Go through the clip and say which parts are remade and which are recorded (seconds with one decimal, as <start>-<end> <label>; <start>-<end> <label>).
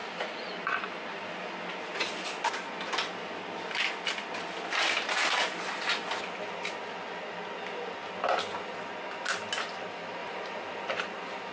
0.0-1.4 remade; 1.4-10.2 recorded; 10.2-10.9 remade; 10.9-11.5 recorded